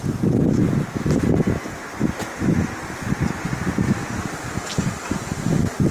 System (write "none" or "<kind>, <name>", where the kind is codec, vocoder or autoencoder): none